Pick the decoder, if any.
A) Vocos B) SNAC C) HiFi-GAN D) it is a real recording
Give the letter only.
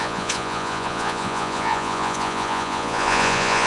A